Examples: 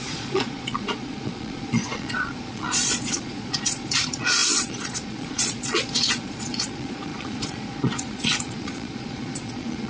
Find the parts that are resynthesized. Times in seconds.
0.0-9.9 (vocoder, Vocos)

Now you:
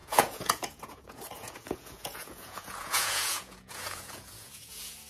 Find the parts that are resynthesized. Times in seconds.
0.0-5.1 (vocoder, Vocos)

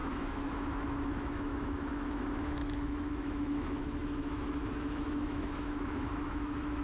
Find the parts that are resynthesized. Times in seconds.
0.0-6.8 (autoencoder, DAC-VAE)

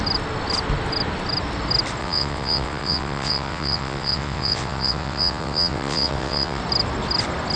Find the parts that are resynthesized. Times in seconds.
2.0-6.6 (vocoder, WaveNeXt)

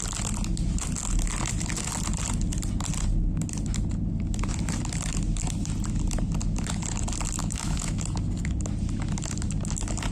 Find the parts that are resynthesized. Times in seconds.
7.4-8.0 (autoencoder, DAC-VAE)

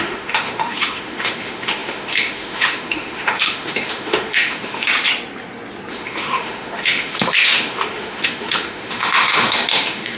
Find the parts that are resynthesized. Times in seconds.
0.0-4.9 (autoencoder, DAC-VAE); 5.9-10.2